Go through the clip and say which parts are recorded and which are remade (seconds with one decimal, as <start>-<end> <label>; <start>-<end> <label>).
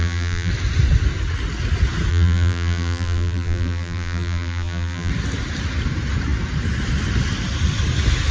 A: 0.0-0.5 remade; 0.5-2.1 recorded; 2.1-5.1 remade; 5.1-8.3 recorded